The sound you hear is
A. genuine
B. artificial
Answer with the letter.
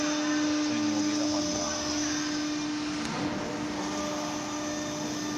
A